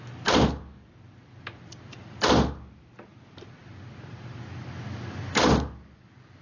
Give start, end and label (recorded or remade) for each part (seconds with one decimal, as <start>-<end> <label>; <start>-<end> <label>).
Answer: 0.0-6.4 recorded